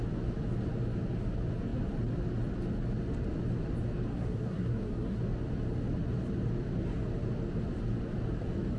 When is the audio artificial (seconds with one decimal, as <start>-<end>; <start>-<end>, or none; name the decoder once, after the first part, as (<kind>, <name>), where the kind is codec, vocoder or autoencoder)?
4.1-5.2 (codec, SNAC)